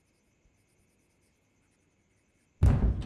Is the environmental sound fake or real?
real